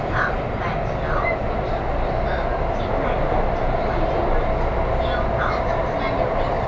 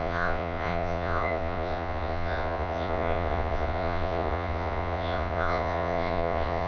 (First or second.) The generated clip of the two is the second